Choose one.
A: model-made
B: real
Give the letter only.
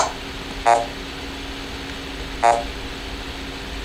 B